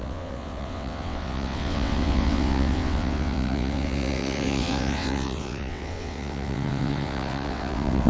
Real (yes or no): no